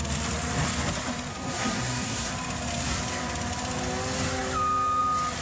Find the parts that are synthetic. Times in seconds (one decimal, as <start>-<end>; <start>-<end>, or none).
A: 1.3-2.3